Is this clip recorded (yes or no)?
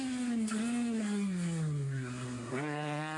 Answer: no